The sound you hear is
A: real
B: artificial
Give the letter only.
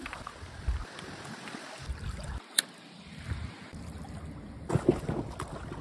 A